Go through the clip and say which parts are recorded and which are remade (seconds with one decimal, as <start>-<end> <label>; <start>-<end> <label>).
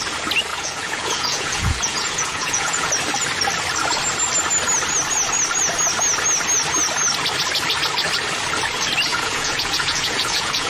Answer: 0.0-0.5 recorded; 0.5-2.9 remade; 2.9-9.1 recorded; 9.1-10.7 remade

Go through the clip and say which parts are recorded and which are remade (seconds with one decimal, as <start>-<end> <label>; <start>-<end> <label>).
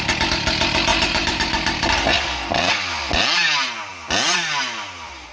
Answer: 0.0-0.9 recorded; 0.9-2.7 remade; 2.7-5.3 recorded